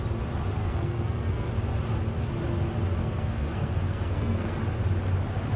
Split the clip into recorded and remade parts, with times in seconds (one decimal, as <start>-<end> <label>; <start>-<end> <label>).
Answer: 0.0-0.6 recorded; 0.6-1.5 remade; 1.5-3.0 recorded; 3.0-4.6 remade; 4.6-5.6 recorded